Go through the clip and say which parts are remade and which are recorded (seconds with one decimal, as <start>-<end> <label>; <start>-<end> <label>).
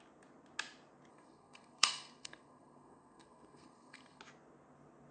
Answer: 0.0-1.1 recorded; 1.1-4.2 remade; 4.2-5.1 recorded